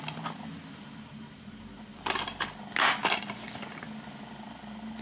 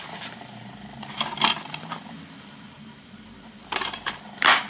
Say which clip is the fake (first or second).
second